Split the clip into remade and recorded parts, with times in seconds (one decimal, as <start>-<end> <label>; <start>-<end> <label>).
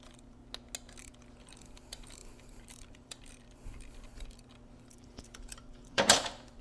0.0-0.4 remade; 0.4-1.0 recorded; 1.0-6.6 remade